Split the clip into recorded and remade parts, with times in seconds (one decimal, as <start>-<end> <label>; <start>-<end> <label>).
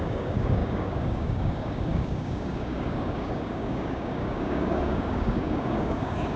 0.0-6.4 remade